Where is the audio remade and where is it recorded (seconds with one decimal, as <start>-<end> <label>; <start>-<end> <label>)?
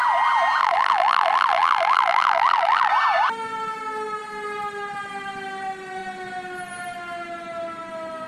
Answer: 0.0-0.6 recorded; 0.6-2.9 remade; 2.9-8.3 recorded